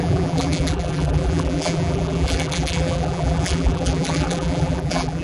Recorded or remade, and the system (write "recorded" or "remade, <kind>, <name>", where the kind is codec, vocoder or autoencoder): remade, vocoder, BigVGAN v2